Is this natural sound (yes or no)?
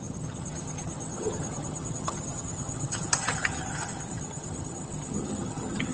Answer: no